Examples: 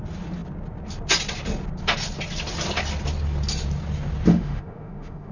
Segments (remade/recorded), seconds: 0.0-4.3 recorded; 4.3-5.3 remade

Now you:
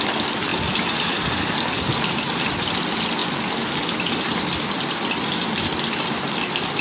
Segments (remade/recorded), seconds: 0.0-6.8 recorded